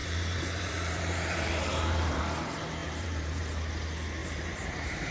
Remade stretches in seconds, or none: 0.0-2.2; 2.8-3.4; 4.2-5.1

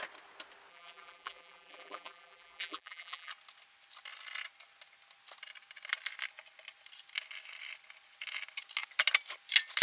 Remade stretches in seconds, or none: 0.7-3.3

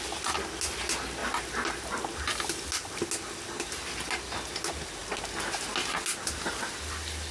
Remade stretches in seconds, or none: 1.2-2.4

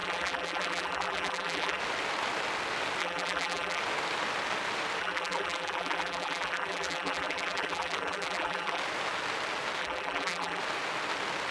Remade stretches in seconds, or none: 0.0-1.8; 3.0-3.8; 5.0-8.8; 9.8-10.6

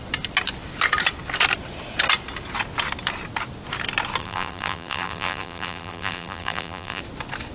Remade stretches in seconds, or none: 4.2-7.0

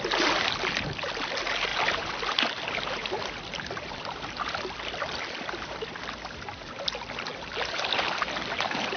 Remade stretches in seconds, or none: 1.7-2.4; 3.0-5.9